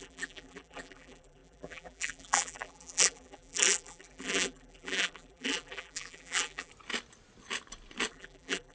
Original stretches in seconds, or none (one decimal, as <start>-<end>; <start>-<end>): 6.7-8.1